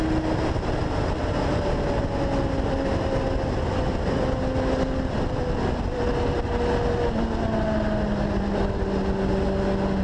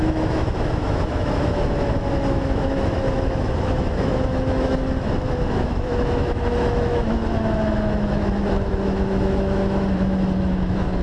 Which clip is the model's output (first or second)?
second